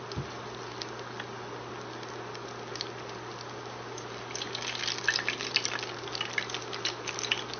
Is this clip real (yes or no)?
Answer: yes